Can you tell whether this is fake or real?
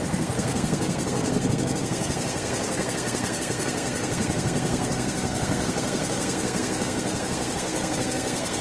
fake